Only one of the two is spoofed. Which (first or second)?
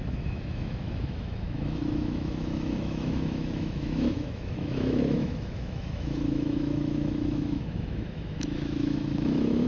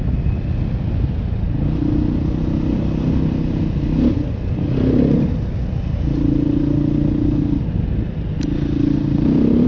first